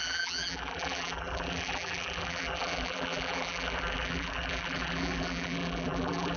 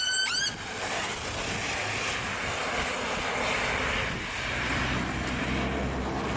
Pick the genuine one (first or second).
second